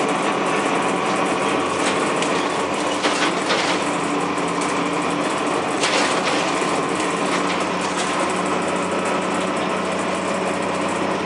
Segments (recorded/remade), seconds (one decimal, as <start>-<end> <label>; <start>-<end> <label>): 0.0-11.3 recorded